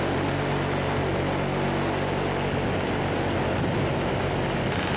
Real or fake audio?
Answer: real